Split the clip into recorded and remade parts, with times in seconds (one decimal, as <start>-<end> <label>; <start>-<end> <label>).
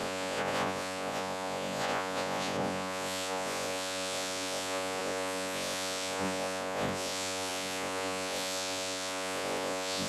0.0-10.1 remade